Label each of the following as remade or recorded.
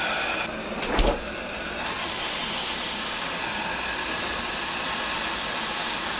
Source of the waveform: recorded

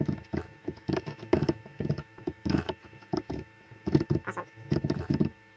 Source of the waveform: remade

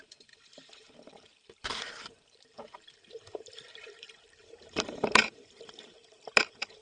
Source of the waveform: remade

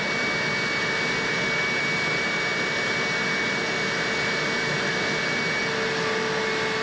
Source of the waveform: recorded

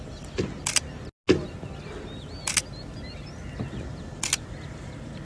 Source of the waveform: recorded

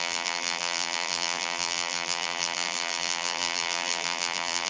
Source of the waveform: remade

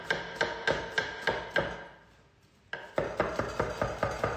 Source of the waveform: recorded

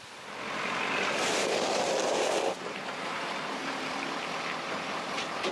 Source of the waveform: remade